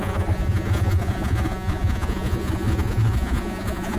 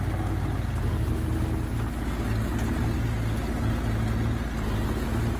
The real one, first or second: second